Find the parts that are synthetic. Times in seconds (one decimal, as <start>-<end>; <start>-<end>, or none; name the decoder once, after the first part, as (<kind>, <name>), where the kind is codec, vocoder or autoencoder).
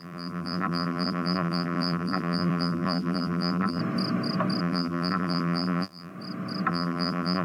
0.0-3.8 (vocoder, BigVGAN v2); 4.6-6.1; 6.7-7.4